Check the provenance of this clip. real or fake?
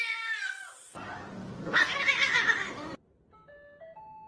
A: real